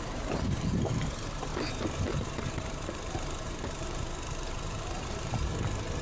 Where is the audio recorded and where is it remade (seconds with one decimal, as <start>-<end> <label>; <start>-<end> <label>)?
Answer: 0.0-1.5 remade; 1.5-2.1 recorded; 2.1-6.0 remade